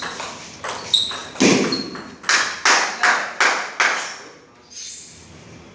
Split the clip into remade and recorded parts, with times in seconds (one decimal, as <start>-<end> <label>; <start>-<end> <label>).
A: 0.0-5.7 recorded